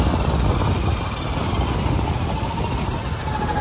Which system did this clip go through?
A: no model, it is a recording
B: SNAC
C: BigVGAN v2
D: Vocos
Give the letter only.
A